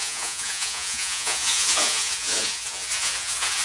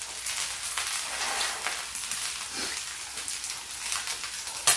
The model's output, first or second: first